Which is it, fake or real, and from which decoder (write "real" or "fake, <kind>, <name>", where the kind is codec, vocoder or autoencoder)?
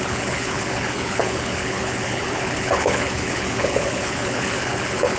fake, codec, HILCodec